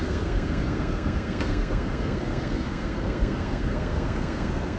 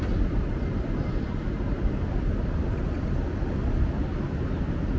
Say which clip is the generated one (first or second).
first